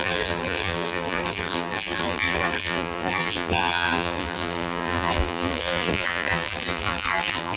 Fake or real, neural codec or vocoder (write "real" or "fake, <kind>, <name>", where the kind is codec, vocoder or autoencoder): fake, vocoder, BigVGAN v2